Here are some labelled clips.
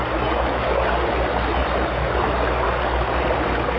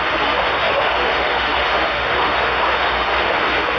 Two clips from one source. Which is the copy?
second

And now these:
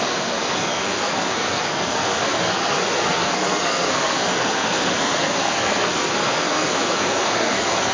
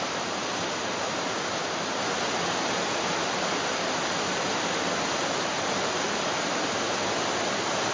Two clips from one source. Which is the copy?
first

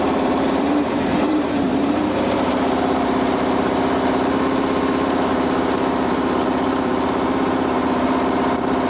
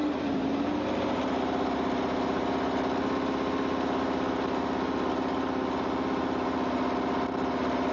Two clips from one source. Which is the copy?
first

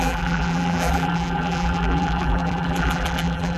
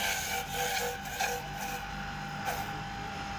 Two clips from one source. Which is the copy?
first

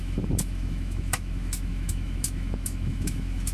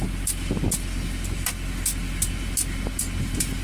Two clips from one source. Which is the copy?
first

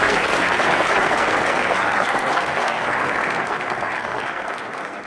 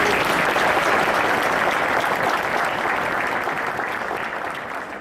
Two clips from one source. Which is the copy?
first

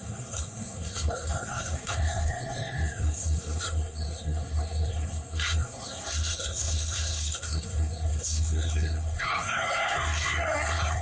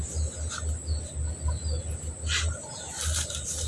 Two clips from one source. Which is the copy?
first